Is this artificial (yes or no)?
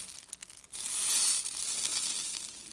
no